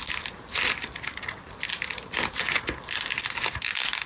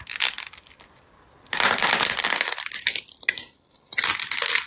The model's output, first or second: second